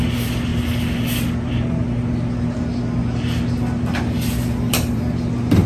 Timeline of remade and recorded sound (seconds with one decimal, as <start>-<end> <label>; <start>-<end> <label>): 0.0-5.7 recorded